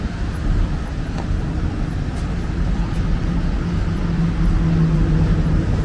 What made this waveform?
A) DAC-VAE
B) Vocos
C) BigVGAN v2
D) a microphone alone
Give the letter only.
D